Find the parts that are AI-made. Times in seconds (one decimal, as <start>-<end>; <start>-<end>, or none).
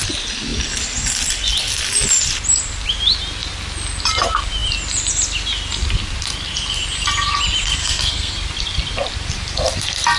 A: 7.8-8.3